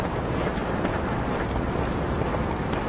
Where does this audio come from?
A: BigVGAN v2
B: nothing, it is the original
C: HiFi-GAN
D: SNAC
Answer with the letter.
A